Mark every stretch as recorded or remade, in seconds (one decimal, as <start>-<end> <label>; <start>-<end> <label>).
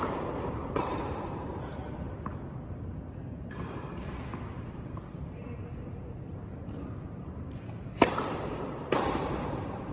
0.0-1.8 remade; 1.8-3.6 recorded; 3.6-9.9 remade